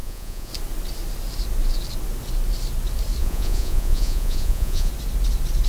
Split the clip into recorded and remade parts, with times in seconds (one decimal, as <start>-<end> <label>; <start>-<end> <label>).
0.0-0.5 remade; 0.5-3.2 recorded; 3.2-4.9 remade; 4.9-5.7 recorded

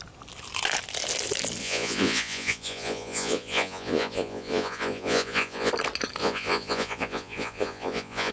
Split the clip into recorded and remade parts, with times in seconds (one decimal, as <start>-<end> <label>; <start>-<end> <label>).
0.0-1.6 recorded; 1.6-5.7 remade; 5.7-6.2 recorded; 6.2-8.3 remade

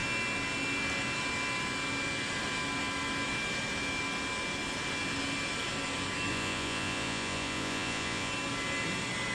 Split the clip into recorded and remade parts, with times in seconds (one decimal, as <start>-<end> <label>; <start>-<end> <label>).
0.0-6.3 recorded; 6.3-8.3 remade; 8.3-9.3 recorded

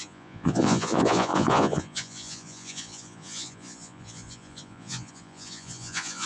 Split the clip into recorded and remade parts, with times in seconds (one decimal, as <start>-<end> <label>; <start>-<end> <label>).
0.0-6.3 remade

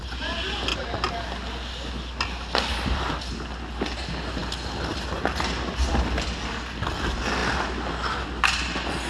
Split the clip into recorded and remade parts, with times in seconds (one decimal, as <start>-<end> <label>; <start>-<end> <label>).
0.0-9.1 recorded

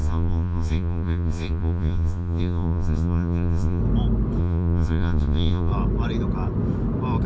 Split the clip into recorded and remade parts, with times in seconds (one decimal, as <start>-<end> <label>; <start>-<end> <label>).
0.0-3.8 remade; 3.8-4.4 recorded; 4.4-5.7 remade; 5.7-7.3 recorded

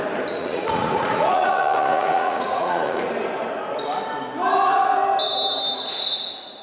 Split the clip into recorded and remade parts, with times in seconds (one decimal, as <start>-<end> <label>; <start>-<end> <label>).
0.0-0.4 recorded; 0.4-3.1 remade; 3.1-5.7 recorded; 5.7-6.6 remade